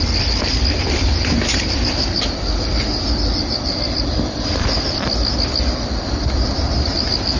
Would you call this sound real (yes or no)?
no